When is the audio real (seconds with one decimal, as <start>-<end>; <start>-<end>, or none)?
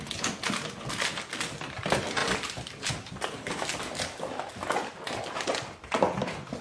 0.0-2.2; 3.1-6.6